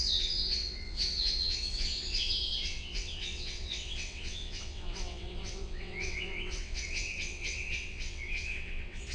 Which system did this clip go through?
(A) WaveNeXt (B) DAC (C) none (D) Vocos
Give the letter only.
A